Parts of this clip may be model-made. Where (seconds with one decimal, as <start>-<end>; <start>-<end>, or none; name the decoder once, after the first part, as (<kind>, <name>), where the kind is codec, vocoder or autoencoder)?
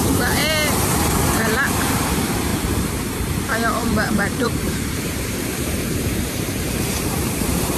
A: 2.5-3.4 (vocoder, BigVGAN v2); 3.8-7.8